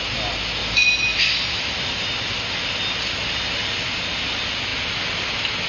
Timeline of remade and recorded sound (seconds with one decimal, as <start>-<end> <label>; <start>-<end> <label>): 0.0-5.7 recorded